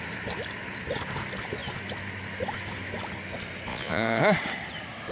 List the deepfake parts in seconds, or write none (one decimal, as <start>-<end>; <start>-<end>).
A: 3.7-4.2